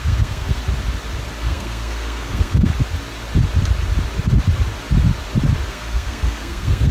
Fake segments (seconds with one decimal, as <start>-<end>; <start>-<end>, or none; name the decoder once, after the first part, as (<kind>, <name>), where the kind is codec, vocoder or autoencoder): 0.0-0.6 (codec, SNAC); 1.4-2.7; 5.7-6.9